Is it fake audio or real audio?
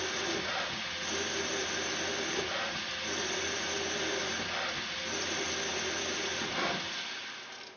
real